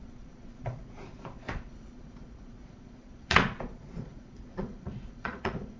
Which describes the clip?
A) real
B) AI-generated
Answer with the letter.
B